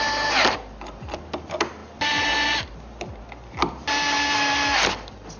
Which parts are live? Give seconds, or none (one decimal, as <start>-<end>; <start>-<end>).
0.0-5.4